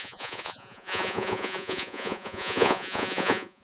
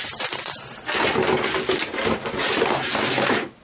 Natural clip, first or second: second